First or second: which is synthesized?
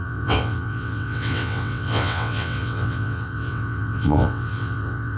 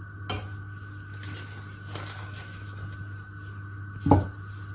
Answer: first